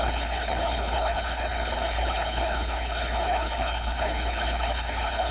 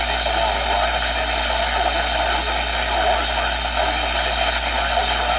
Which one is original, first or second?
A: second